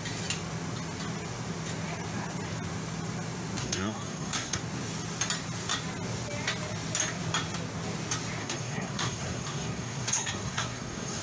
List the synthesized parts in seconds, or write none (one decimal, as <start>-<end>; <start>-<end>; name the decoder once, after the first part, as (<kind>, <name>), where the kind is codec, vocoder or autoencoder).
3.6-4.6 (codec, SNAC); 8.4-11.2